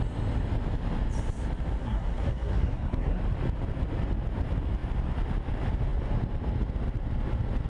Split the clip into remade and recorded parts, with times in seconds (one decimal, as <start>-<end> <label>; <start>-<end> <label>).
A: 0.0-1.8 recorded; 1.8-3.2 remade; 3.2-7.7 recorded